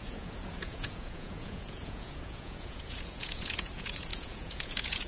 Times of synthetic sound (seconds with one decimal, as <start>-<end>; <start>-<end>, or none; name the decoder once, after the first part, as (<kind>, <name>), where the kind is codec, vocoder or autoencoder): 0.0-5.1 (vocoder, Vocos)